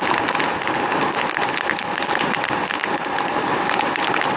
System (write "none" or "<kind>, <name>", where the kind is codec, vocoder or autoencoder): none